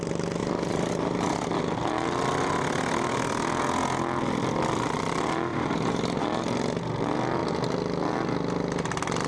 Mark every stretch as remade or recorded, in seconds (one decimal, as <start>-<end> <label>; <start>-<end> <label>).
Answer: 0.0-0.4 recorded; 0.4-1.6 remade; 1.6-5.5 recorded; 5.5-6.2 remade; 6.2-9.3 recorded